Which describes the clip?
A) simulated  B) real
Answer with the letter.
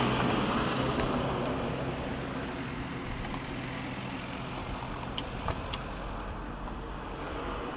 B